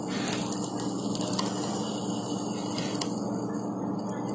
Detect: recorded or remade recorded